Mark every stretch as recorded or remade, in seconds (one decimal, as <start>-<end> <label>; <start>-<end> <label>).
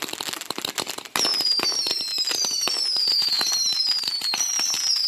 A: 0.0-1.3 recorded; 1.3-4.4 remade; 4.4-5.1 recorded